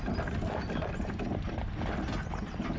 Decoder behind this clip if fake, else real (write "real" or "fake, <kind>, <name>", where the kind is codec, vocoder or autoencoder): real